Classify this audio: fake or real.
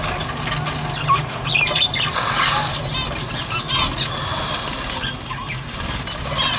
real